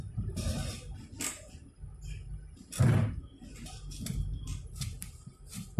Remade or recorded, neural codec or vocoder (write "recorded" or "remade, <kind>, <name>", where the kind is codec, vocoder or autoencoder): recorded